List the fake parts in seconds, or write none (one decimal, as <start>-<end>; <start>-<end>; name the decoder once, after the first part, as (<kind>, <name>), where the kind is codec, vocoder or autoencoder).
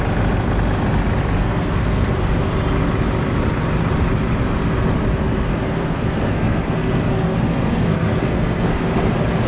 1.4-2.5 (codec, SNAC); 5.5-9.1